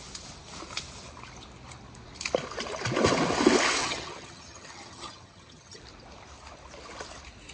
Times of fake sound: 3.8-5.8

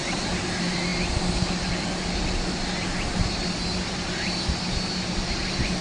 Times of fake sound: none

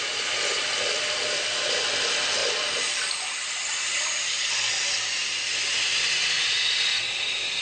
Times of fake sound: 2.4-4.5

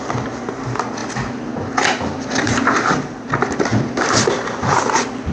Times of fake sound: 3.7-5.3

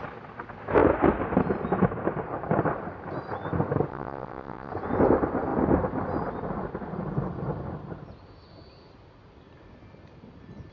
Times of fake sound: 3.9-4.7

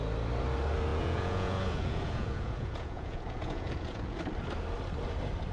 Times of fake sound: 0.9-4.2

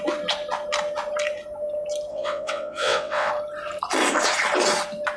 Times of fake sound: 2.1-3.3

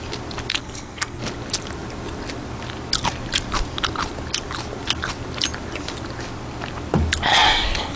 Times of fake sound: 0.5-1.2; 7.3-8.0